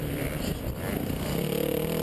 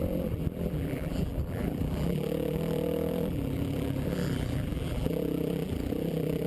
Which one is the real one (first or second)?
first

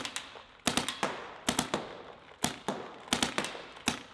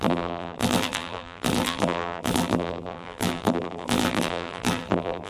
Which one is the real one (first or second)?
first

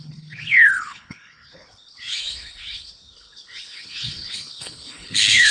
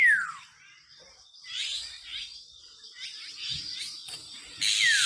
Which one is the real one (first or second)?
second